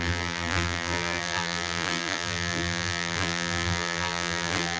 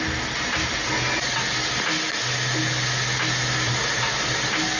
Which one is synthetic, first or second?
first